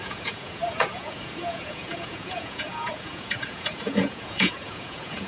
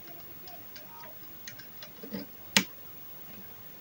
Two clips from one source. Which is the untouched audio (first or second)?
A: second